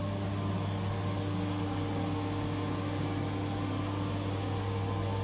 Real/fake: real